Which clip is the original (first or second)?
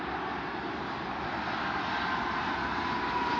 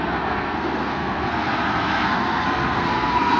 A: first